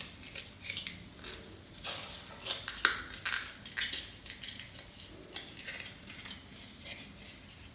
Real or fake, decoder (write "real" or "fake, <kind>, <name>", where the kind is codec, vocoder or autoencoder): real